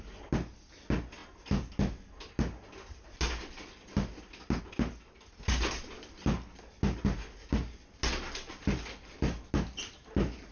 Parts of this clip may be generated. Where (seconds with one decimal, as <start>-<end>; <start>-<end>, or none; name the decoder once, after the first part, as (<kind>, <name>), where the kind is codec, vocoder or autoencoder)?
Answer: none